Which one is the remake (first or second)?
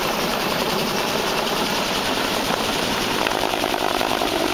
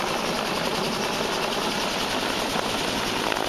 first